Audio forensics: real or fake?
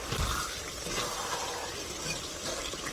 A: fake